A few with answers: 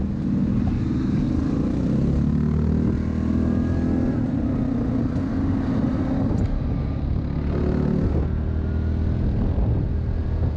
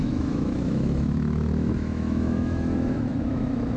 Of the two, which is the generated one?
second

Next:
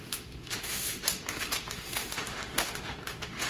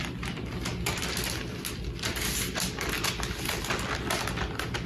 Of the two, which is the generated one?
first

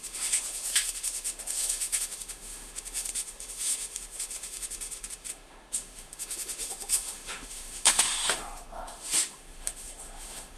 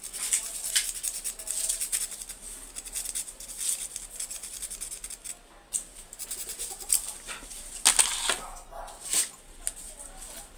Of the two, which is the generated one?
first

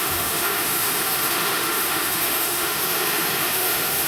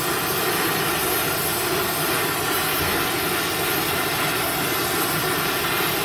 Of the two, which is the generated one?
first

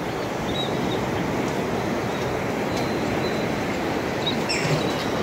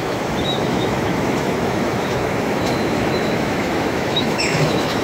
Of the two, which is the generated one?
second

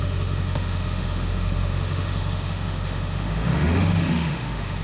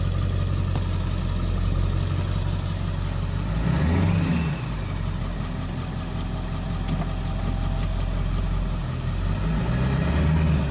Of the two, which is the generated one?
first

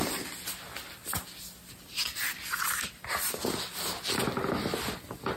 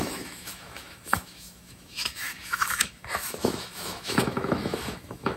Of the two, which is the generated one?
second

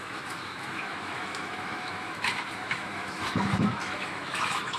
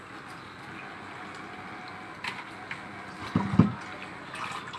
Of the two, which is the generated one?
first